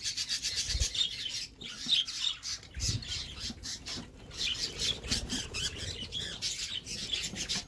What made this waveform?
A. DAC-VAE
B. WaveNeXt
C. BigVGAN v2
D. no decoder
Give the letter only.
D